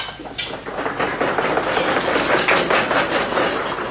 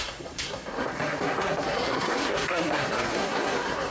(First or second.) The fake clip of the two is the second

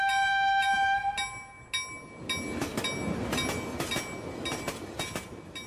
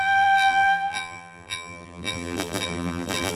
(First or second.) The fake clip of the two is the second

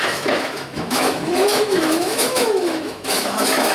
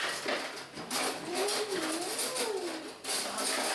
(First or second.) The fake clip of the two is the first